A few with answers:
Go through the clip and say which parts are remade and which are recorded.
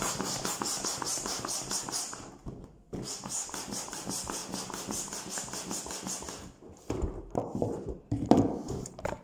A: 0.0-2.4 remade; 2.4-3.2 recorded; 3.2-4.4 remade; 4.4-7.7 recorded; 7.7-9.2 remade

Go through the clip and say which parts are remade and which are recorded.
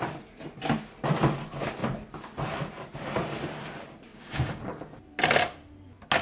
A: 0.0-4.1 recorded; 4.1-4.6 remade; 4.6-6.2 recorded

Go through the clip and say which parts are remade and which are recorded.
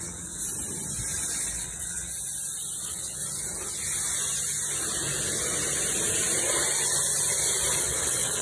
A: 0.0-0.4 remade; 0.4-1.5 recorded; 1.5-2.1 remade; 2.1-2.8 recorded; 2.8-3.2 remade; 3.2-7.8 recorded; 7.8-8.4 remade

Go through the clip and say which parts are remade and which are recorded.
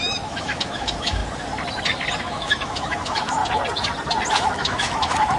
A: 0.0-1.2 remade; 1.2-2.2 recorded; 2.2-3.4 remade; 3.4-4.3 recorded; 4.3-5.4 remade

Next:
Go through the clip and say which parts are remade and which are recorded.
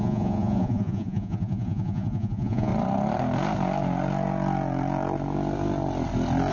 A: 0.0-2.7 remade; 2.7-6.5 recorded